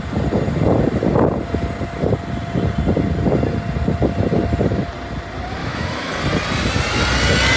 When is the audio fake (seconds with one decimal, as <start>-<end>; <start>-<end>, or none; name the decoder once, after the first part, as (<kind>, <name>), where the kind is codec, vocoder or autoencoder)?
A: 5.6-6.1 (autoencoder, DAC-VAE)

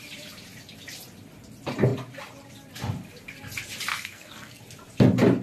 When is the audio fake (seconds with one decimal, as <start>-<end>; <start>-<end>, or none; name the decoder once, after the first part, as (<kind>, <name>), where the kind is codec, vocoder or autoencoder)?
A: 3.9-4.6 (codec, SNAC)

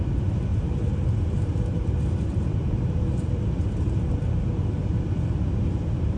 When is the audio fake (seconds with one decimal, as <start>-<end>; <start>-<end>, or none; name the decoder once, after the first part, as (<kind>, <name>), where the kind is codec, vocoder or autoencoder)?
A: 0.5-4.2 (vocoder, BigVGAN v2)

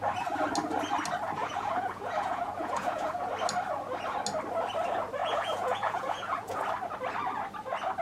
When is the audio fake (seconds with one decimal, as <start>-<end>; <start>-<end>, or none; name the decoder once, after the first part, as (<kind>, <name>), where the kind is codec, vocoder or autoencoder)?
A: 1.4-3.3 (vocoder, Vocos); 5.2-6.6